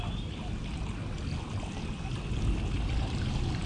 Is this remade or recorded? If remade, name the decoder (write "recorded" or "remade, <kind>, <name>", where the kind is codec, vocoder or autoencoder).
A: recorded